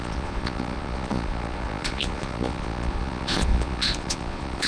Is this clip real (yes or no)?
no